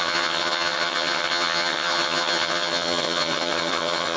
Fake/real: fake